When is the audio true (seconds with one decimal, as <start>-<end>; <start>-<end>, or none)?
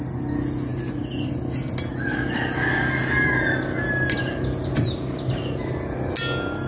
0.0-6.7